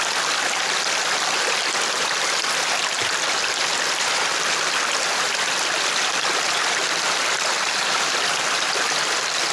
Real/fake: real